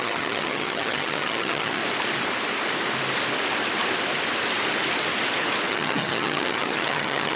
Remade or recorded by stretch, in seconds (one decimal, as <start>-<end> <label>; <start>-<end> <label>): 0.0-1.8 remade; 1.8-5.7 recorded; 5.7-7.4 remade